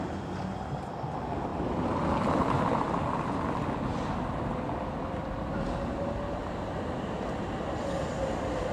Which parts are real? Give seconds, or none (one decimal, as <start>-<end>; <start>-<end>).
0.0-8.7